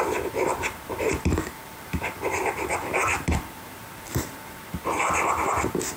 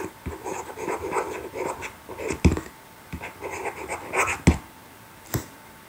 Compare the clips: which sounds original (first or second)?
second